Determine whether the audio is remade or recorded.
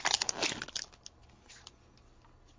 recorded